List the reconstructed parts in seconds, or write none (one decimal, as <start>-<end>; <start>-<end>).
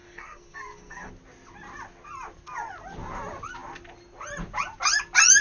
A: 0.0-1.1